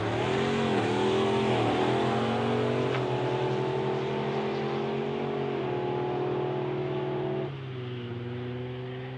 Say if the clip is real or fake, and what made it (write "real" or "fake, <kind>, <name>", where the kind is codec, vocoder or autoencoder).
real